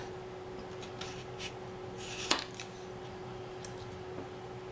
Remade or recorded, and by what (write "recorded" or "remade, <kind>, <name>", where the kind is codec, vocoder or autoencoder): recorded